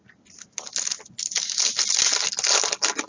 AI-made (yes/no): no